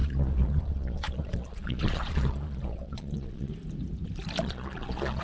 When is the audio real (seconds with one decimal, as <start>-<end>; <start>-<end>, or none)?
3.5-4.4